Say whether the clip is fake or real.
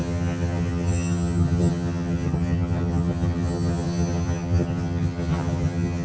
fake